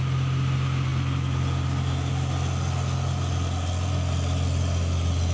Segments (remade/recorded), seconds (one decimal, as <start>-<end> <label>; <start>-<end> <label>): 0.0-5.3 recorded